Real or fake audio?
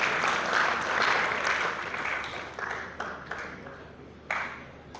real